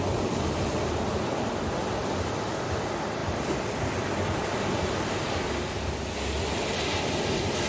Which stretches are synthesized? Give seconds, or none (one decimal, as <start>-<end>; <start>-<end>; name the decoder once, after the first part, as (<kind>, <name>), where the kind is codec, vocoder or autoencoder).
none